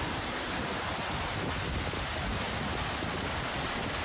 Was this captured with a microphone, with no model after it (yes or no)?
yes